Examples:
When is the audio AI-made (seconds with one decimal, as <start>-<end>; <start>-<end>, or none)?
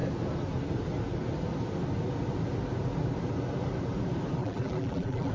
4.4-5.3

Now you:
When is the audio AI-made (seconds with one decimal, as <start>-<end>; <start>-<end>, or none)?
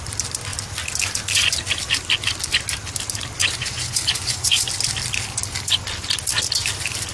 3.4-4.7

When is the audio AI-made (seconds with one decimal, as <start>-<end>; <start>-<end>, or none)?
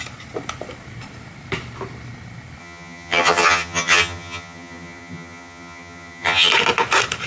2.6-6.5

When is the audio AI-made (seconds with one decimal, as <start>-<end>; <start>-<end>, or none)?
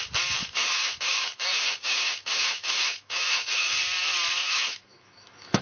0.4-3.8; 4.4-5.6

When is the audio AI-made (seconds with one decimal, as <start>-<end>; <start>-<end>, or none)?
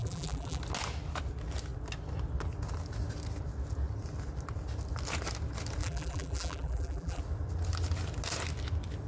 0.0-0.6; 5.8-7.2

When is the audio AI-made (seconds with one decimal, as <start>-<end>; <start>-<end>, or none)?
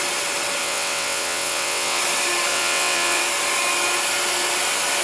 0.6-2.0; 2.5-3.2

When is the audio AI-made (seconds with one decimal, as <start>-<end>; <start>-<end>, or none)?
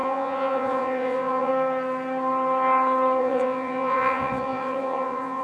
0.0-1.5; 3.2-5.4